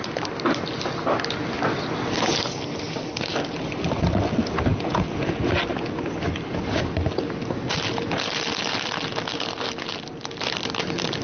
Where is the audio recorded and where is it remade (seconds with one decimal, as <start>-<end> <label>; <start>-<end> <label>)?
0.0-4.7 recorded; 4.7-5.3 remade; 5.3-11.2 recorded